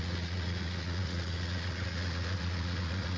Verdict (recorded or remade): remade